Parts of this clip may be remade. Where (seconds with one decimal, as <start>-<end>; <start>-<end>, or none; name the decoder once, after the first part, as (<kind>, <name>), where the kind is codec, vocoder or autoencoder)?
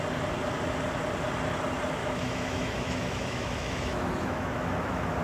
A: 2.0-5.2 (autoencoder, DAC-VAE)